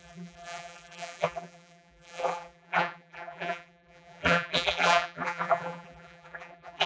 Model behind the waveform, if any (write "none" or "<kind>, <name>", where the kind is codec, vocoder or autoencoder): vocoder, BigVGAN v2